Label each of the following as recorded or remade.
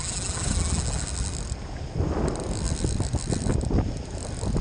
recorded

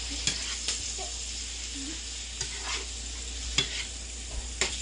recorded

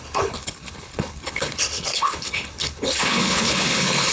remade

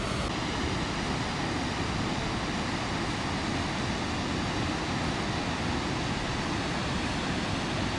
recorded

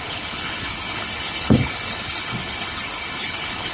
remade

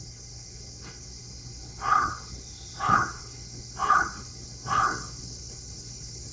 remade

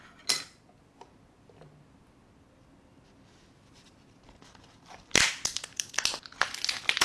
recorded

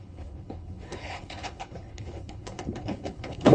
remade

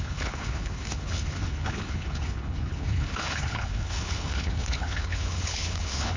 remade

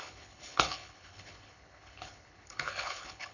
remade